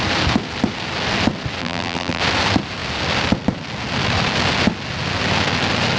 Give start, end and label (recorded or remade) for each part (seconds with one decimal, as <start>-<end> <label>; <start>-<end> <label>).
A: 0.0-1.6 recorded; 1.6-2.2 remade; 2.2-6.0 recorded